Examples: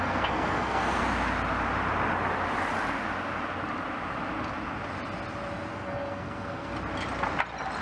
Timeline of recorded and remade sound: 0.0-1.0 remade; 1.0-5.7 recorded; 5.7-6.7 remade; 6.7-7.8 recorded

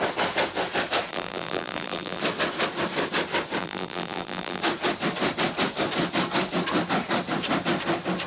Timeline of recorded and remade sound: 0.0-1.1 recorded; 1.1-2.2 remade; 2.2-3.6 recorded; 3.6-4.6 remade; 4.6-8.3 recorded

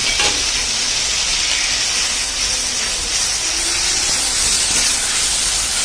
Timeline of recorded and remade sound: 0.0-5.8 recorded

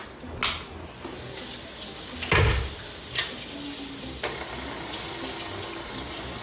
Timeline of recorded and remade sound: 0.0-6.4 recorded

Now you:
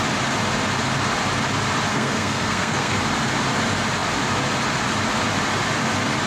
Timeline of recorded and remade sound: 0.0-1.9 recorded; 1.9-3.0 remade; 3.0-6.3 recorded

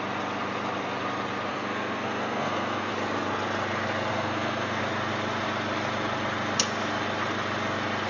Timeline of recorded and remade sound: 0.0-1.5 recorded; 1.5-2.9 remade; 2.9-4.1 recorded; 4.1-4.8 remade; 4.8-8.1 recorded

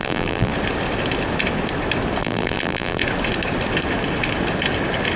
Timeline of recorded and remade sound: 0.0-0.5 remade; 0.5-2.2 recorded; 2.2-3.0 remade; 3.0-5.2 recorded

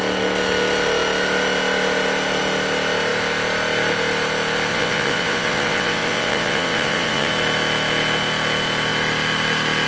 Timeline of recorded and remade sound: 0.0-4.7 recorded; 4.7-7.3 remade; 7.3-9.9 recorded